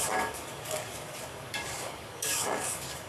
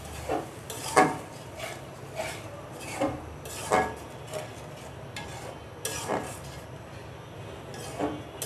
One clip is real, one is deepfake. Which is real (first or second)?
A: second